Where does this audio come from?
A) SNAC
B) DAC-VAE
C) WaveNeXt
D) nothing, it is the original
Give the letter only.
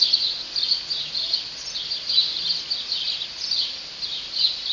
D